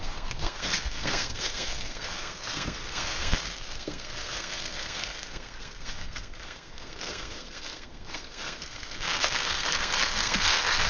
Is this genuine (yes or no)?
no